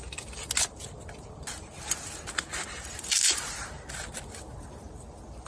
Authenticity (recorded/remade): recorded